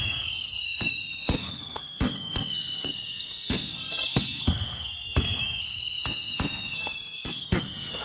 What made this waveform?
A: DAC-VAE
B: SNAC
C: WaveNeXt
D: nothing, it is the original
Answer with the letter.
B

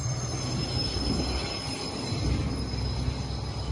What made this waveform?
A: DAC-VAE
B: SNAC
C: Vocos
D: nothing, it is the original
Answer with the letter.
D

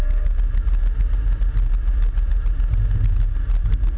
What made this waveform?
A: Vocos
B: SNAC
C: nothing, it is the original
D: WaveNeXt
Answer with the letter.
C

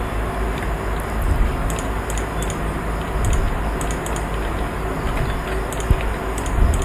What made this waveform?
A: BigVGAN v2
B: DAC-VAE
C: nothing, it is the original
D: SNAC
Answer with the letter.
C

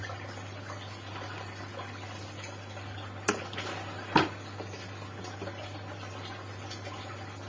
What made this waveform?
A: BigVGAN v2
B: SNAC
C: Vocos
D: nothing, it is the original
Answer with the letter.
D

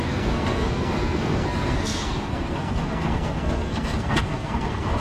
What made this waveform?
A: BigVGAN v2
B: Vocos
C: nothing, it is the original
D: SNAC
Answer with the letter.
D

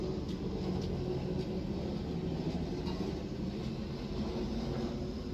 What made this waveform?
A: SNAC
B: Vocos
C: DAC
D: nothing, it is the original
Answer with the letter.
D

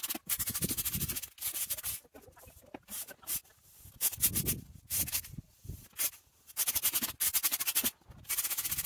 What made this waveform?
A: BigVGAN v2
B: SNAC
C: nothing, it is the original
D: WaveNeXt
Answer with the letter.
C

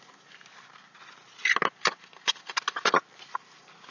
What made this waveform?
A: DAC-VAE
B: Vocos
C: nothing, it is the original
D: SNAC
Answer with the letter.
C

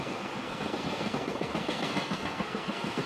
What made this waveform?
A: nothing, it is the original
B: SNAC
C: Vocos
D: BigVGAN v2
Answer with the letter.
B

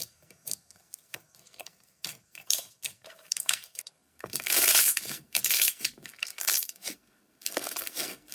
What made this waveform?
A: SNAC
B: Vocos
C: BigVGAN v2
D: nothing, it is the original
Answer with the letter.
A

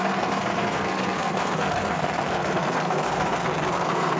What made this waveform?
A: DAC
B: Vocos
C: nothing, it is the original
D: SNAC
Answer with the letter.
D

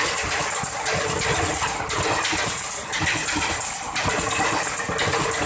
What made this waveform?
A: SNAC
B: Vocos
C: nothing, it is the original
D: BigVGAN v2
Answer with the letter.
C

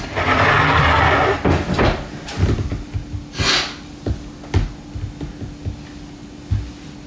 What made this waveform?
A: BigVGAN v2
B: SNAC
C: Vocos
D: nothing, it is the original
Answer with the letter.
D